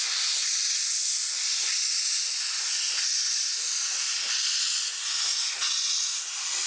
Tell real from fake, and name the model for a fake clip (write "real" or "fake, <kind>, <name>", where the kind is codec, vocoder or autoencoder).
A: real